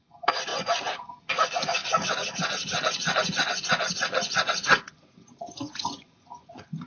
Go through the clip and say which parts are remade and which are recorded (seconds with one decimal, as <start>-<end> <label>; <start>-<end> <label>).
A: 0.0-6.9 remade